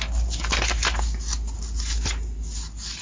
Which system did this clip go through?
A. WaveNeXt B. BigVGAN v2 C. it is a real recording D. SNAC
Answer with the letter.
C